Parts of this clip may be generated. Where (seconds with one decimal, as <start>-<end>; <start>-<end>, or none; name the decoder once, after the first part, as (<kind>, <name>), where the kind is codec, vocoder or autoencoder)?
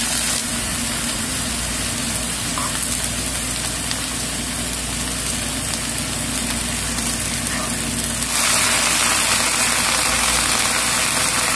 0.4-1.5 (vocoder, BigVGAN v2)